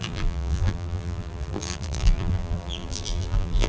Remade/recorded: remade